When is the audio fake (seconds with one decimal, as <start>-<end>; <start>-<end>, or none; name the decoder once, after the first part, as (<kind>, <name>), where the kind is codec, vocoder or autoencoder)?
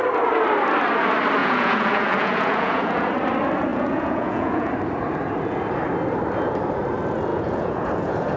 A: 1.4-3.1 (vocoder, Vocos); 3.7-4.7; 7.3-8.4